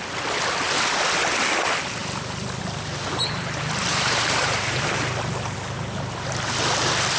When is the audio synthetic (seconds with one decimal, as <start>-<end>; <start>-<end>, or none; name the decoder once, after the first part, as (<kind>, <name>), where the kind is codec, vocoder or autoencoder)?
3.9-5.1 (vocoder, BigVGAN v2)

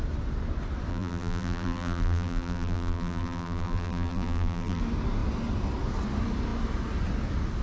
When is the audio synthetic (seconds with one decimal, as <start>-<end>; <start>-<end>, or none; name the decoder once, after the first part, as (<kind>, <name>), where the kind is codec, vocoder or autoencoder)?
0.9-4.8 (vocoder, BigVGAN v2)

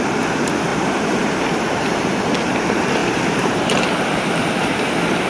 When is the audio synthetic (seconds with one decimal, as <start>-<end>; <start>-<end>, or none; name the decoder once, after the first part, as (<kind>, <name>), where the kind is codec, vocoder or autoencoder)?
0.7-2.1 (vocoder, BigVGAN v2); 3.0-4.8

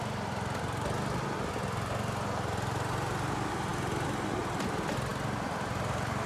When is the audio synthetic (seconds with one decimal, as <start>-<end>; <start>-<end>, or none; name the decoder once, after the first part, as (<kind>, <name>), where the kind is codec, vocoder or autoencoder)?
none

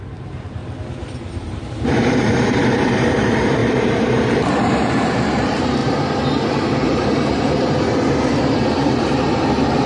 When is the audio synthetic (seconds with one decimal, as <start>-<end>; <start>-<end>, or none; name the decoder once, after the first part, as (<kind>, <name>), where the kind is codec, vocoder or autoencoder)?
0.0-0.6 (vocoder, BigVGAN v2); 1.4-9.9

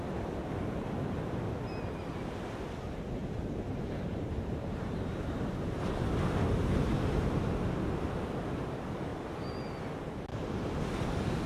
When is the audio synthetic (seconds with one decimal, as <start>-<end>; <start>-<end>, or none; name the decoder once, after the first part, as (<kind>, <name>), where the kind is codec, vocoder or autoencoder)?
3.2-5.3 (vocoder, BigVGAN v2)